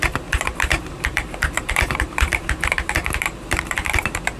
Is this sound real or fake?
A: fake